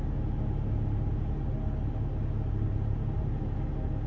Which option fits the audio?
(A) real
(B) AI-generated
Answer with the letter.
A